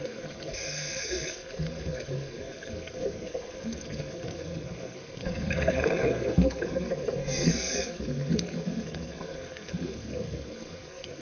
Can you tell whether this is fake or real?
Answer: fake